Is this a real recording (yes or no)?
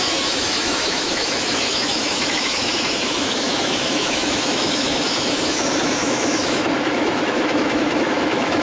no